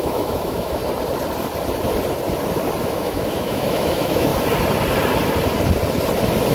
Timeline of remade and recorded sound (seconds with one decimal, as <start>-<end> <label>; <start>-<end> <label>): 0.0-0.8 remade; 0.8-2.8 recorded; 2.8-4.3 remade; 4.3-6.5 recorded